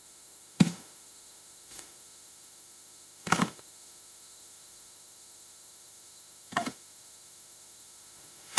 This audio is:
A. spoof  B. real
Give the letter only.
A